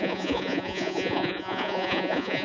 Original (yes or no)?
no